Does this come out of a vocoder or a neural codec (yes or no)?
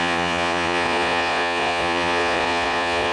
yes